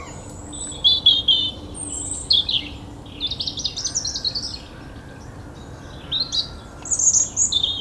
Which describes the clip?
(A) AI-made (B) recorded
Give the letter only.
B